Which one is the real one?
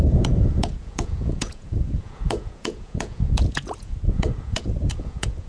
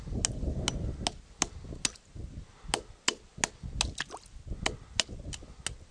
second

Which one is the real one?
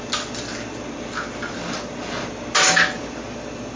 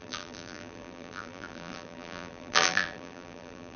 first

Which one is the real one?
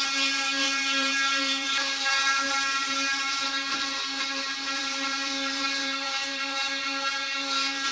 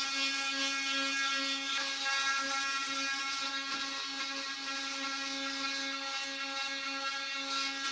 second